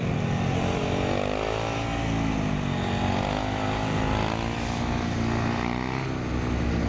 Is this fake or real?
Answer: real